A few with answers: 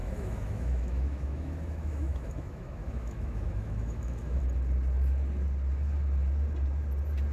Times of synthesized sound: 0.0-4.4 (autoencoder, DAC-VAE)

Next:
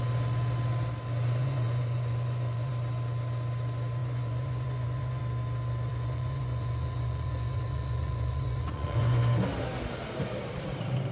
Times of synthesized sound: 1.4-2.7 (vocoder, Vocos); 4.0-5.2; 5.9-9.2

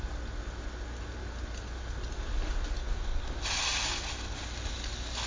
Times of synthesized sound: 1.2-1.8 (vocoder, BigVGAN v2); 3.1-4.4

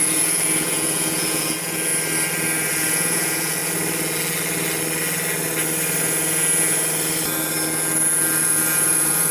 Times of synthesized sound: 0.0-1.9 (vocoder, Vocos); 2.7-3.6; 8.4-9.3

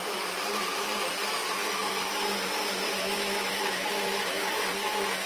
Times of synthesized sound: 1.8-4.7 (autoencoder, DAC-VAE)

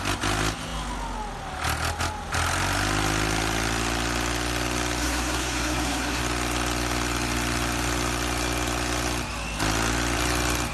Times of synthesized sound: 5.0-6.2 (codec, SNAC)

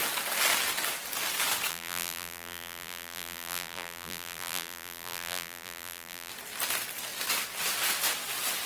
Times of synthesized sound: 1.7-6.3 (vocoder, BigVGAN v2)

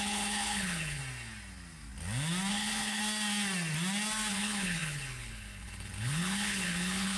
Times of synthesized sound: 0.0-1.0 (codec, HILCodec); 2.5-3.0; 4.3-7.2